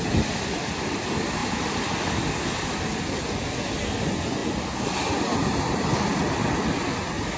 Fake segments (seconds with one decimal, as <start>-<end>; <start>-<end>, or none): none